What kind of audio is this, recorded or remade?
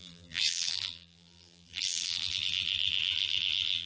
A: remade